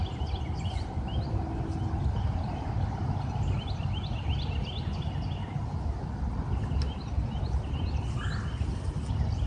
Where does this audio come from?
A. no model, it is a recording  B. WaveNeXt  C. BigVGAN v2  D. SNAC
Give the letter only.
A